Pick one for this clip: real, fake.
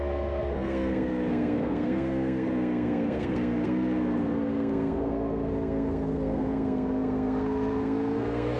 fake